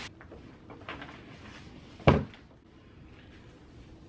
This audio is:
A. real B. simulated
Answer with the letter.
A